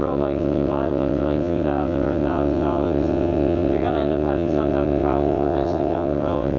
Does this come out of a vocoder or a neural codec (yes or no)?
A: yes